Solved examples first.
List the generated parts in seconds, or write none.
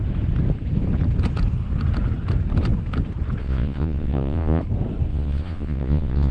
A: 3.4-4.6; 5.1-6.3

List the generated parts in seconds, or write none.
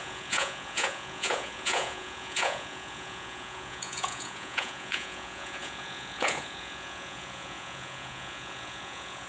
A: 0.0-9.3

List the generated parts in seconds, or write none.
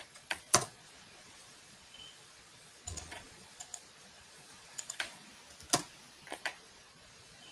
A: 0.0-5.3; 6.3-7.5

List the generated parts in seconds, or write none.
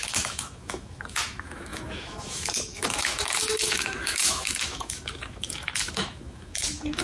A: 0.0-7.0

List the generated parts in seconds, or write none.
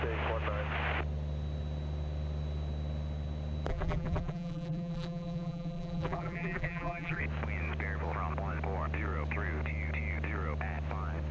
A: 3.7-7.2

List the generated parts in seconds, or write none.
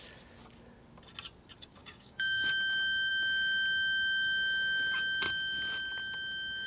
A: 1.8-2.5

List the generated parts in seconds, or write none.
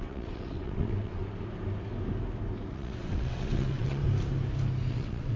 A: 0.0-1.2; 2.7-4.0; 4.9-5.4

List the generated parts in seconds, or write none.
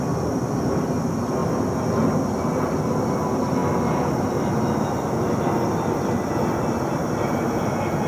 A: none